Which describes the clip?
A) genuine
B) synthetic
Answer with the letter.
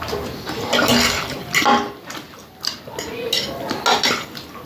A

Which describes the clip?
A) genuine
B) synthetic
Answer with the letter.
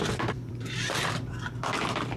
B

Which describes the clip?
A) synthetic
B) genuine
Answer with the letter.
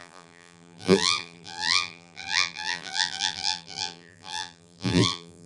A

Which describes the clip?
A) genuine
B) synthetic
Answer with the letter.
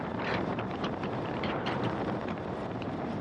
B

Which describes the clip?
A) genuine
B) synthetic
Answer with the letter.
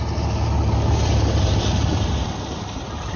B